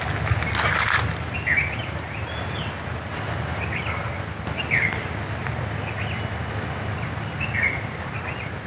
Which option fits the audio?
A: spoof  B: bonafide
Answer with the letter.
B